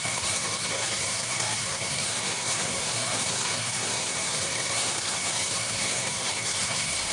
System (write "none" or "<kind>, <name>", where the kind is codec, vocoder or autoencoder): codec, SNAC